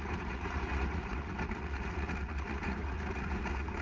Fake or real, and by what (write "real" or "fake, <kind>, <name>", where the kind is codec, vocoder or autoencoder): fake, vocoder, Vocos